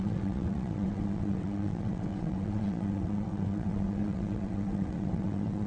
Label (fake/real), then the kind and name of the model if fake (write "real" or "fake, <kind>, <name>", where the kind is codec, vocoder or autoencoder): fake, vocoder, WaveNeXt